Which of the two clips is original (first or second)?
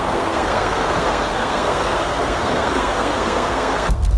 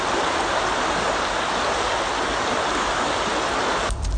second